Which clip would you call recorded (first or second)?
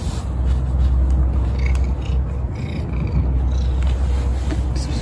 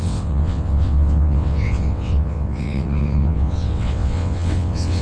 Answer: first